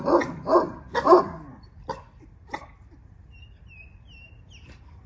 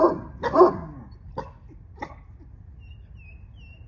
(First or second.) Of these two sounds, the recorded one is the second